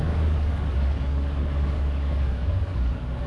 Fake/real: fake